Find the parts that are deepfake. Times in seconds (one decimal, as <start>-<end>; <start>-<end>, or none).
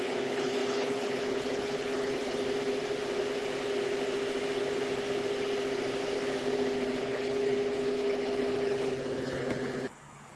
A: 0.0-2.4; 7.0-10.4